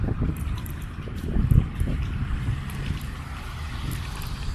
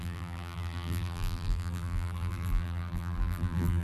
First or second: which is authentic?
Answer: first